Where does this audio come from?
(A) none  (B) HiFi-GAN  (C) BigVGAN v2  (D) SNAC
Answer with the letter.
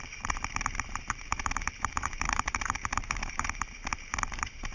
C